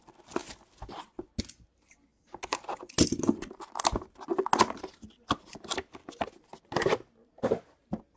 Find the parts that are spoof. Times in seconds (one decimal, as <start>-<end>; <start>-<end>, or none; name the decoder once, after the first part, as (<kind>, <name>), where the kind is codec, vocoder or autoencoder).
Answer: none